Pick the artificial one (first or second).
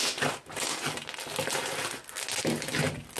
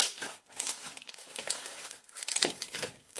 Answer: second